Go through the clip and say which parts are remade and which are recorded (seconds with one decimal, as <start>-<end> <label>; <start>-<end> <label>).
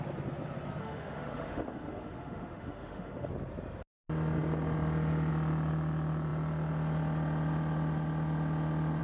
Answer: 0.0-0.8 recorded; 0.8-3.3 remade; 3.3-9.0 recorded